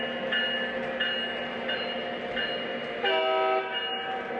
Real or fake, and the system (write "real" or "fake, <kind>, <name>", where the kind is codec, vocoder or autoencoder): real